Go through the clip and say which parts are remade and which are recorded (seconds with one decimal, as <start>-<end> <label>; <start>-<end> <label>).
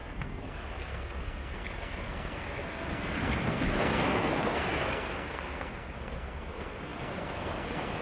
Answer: 0.0-8.0 remade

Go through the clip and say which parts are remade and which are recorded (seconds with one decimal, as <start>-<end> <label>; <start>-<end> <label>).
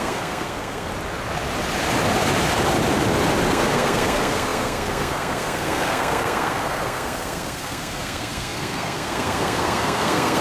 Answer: 0.0-0.9 remade; 0.9-3.5 recorded; 3.5-10.4 remade